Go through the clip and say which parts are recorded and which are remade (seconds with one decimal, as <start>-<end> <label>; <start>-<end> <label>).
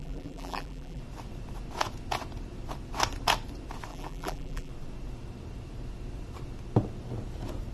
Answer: 0.0-1.0 remade; 1.0-3.9 recorded; 3.9-4.7 remade; 4.7-7.7 recorded